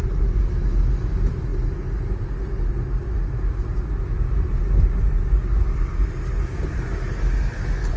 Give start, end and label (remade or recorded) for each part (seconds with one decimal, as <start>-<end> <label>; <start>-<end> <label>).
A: 0.0-8.0 recorded